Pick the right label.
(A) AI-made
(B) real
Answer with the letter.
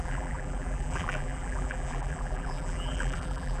A